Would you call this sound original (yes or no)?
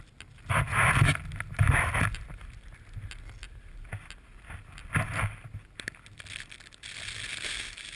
yes